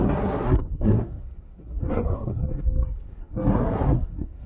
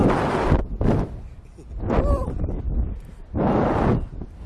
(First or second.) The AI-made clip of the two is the first